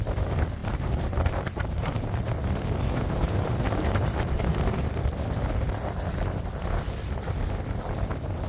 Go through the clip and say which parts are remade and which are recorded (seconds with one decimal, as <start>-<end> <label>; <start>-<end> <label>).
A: 0.0-0.6 recorded; 0.6-4.4 remade; 4.4-8.5 recorded